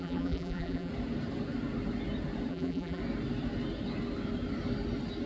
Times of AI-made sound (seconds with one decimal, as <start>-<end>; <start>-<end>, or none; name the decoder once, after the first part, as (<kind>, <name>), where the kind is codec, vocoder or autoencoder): 0.0-0.9 (vocoder, BigVGAN v2); 2.5-3.0